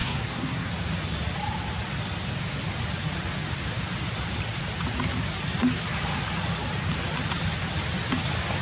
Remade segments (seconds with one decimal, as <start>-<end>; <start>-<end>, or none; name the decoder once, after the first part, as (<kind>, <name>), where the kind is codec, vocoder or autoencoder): 0.0-0.7 (codec, SNAC)